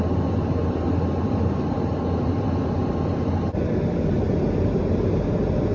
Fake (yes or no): no